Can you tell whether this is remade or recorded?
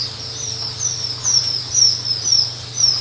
remade